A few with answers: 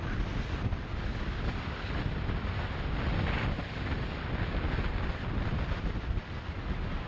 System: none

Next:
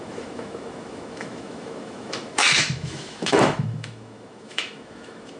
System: autoencoder, DAC-VAE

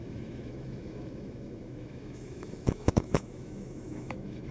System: autoencoder, DAC-VAE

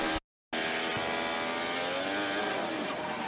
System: none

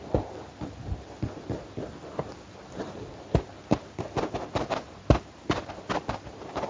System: none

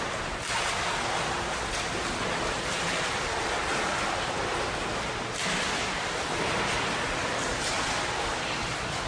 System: none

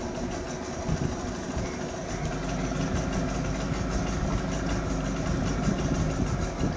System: none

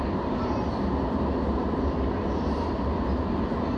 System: none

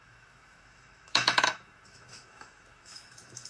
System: autoencoder, DAC-VAE